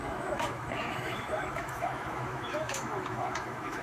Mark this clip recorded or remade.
remade